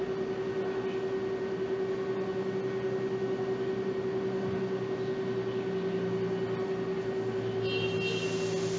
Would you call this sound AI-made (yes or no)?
no